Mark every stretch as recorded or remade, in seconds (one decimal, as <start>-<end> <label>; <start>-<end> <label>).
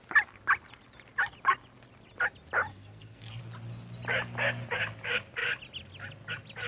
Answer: 0.0-2.7 recorded; 2.7-3.4 remade; 3.4-6.7 recorded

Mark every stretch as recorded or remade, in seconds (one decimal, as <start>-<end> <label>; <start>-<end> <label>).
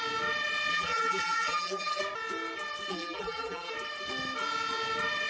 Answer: 0.0-0.7 recorded; 0.7-2.0 remade; 2.0-2.9 recorded; 2.9-3.7 remade; 3.7-5.3 recorded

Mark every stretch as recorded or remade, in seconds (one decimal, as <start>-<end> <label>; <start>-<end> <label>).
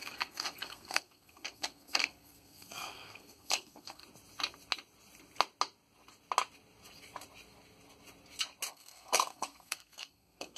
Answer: 0.0-4.0 remade; 4.0-8.7 recorded; 8.7-10.6 remade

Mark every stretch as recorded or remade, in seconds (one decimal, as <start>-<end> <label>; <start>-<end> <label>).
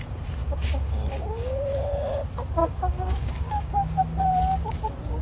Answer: 0.0-0.4 recorded; 0.4-1.9 remade; 1.9-2.6 recorded; 2.6-4.0 remade; 4.0-5.2 recorded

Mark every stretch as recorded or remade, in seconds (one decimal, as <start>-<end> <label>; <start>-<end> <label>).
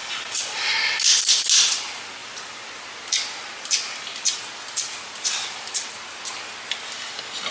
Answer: 0.0-7.5 recorded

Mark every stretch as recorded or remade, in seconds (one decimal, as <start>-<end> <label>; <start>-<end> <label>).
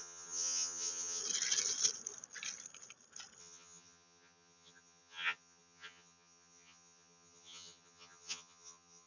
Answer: 0.0-1.2 remade; 1.2-3.4 recorded; 3.4-9.1 remade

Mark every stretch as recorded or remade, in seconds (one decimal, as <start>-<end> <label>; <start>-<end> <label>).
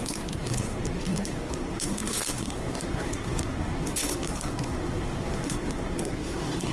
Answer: 0.0-6.7 remade